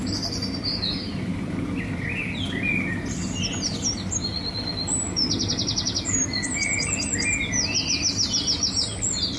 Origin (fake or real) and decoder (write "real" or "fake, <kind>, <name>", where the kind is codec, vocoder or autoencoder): real